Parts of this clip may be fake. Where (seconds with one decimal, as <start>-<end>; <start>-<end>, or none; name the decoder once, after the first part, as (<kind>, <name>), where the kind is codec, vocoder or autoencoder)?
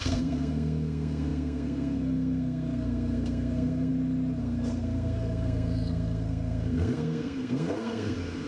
0.0-3.9 (codec, SNAC); 4.4-8.5